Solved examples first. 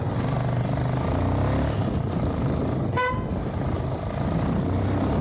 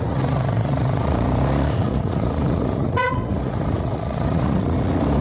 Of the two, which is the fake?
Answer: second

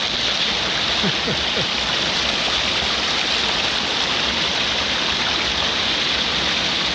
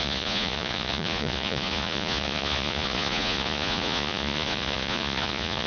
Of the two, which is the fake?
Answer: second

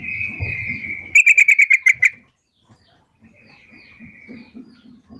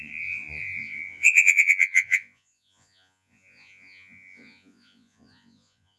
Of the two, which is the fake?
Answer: second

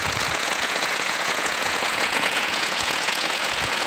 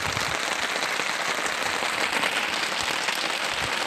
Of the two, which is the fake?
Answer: first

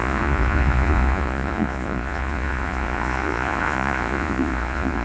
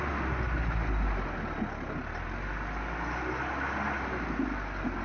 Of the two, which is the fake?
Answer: first